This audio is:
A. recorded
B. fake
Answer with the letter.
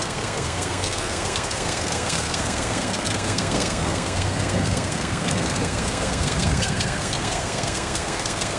B